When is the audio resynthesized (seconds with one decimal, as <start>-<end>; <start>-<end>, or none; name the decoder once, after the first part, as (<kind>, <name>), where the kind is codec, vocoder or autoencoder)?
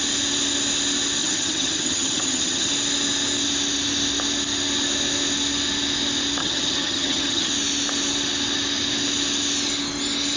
1.2-2.7 (vocoder, HiFi-GAN); 6.4-7.5